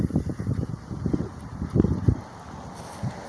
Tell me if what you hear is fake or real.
real